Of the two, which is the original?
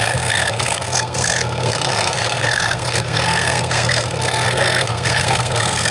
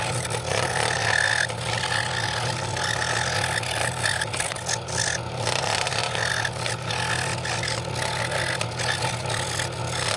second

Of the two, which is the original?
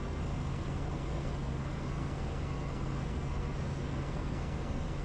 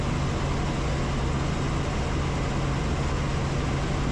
second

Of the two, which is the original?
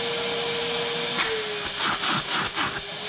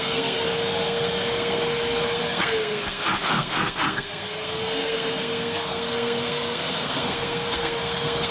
first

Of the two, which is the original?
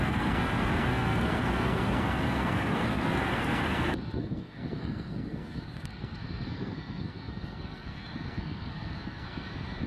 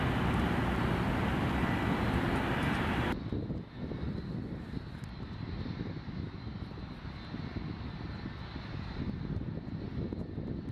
second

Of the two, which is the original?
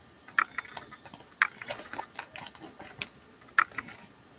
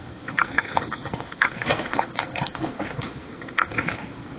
first